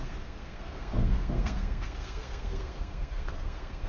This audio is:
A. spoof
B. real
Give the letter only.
A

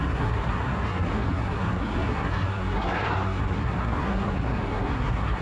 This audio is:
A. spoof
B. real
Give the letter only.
A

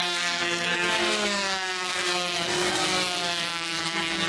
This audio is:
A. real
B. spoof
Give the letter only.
B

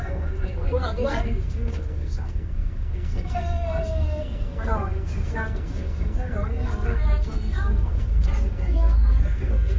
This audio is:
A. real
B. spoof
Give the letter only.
B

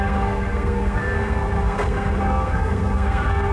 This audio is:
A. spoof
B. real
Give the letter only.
A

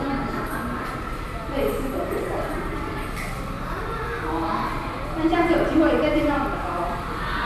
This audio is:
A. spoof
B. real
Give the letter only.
B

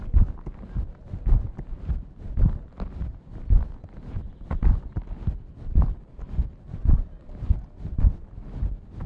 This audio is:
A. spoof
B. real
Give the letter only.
B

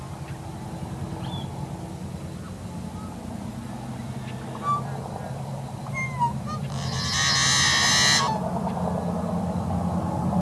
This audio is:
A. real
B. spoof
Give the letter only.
A